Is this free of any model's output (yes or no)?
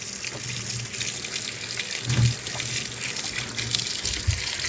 yes